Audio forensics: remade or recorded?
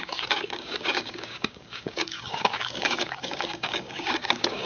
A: remade